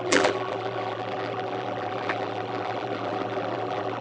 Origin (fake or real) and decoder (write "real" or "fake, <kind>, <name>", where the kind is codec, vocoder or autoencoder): fake, vocoder, BigVGAN v2